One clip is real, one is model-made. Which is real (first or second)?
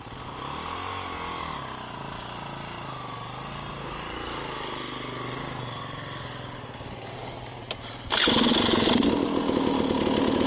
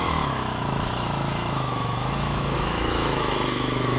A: first